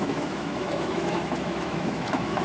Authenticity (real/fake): fake